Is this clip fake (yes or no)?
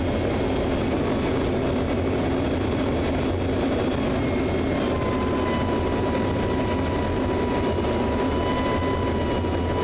no